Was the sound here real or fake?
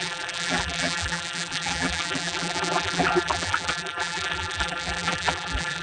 fake